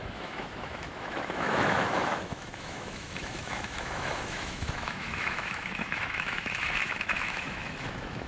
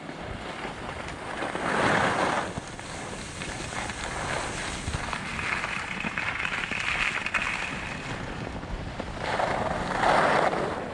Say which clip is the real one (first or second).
second